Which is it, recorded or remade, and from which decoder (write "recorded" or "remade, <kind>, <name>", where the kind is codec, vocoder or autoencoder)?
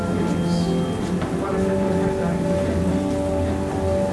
recorded